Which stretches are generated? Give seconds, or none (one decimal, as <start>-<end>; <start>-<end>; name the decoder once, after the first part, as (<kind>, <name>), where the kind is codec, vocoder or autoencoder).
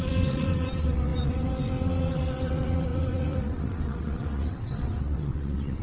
0.0-5.8 (vocoder, WaveNeXt)